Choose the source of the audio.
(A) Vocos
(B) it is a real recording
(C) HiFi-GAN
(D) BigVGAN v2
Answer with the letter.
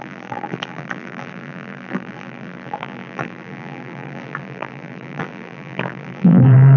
D